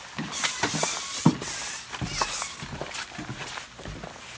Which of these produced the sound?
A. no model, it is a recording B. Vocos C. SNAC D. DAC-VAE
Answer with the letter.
A